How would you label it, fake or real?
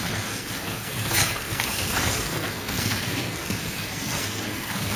fake